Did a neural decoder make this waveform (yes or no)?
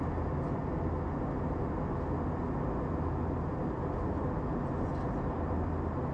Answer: no